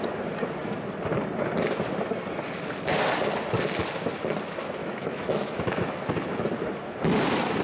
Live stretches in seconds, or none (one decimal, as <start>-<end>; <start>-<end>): 0.0-4.8; 6.0-7.6